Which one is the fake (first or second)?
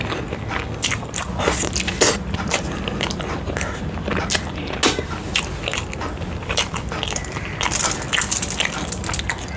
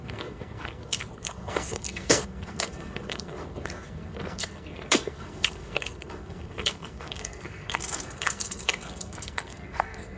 second